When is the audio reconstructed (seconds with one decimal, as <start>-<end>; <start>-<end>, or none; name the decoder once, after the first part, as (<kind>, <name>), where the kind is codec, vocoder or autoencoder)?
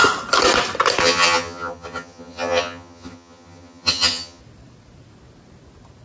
1.0-4.4 (vocoder, HiFi-GAN)